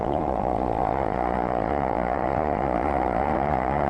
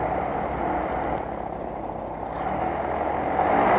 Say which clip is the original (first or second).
second